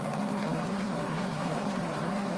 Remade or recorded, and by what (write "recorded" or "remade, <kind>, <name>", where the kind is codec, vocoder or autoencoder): remade, codec, SNAC